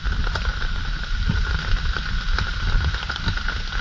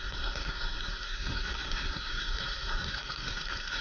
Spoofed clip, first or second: second